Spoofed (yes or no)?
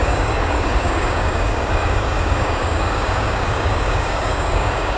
yes